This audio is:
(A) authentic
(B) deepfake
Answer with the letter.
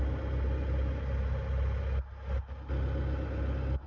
A